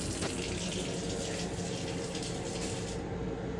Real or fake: real